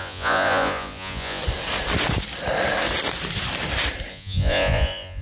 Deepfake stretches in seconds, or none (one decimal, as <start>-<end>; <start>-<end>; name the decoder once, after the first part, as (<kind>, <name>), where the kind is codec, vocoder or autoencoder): 0.0-1.4 (vocoder, Vocos); 4.1-5.2